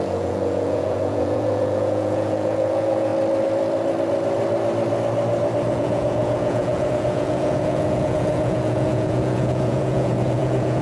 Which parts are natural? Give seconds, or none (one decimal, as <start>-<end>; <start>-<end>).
3.1-5.7